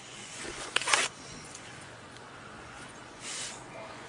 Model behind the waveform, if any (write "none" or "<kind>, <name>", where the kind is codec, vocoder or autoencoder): vocoder, Vocos